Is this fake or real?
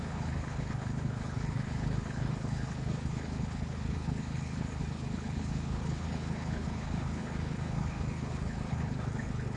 fake